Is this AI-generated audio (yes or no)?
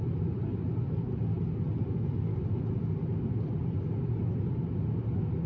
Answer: no